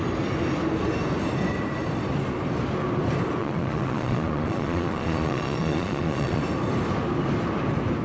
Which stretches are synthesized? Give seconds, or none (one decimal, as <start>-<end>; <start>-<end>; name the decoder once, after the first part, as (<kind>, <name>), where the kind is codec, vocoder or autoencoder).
3.4-6.4 (vocoder, Vocos)